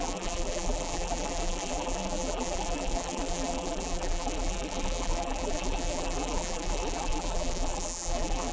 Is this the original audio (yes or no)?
no